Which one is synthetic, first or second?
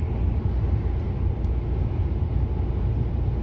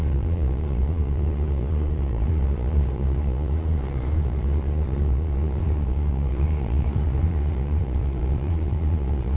second